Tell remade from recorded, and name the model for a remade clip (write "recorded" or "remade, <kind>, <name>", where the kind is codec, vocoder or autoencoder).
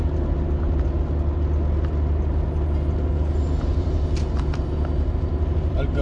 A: recorded